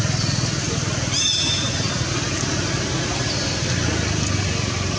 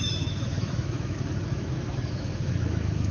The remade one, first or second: second